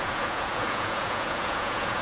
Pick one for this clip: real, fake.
fake